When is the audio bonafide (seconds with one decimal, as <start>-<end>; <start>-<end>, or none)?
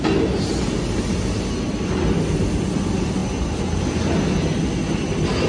0.0-5.5